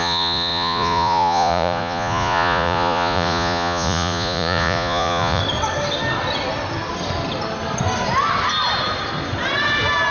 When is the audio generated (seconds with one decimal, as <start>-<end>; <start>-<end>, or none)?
0.0-5.4